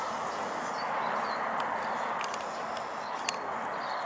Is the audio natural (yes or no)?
yes